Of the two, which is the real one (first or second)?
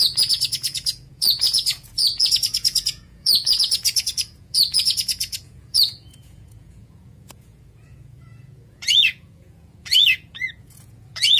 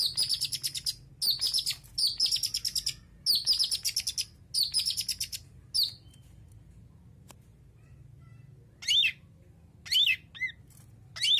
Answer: second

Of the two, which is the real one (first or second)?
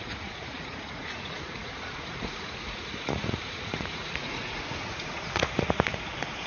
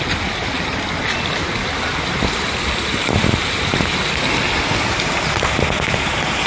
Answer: second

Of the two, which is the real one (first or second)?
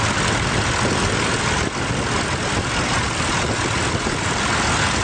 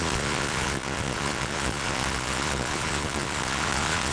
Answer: first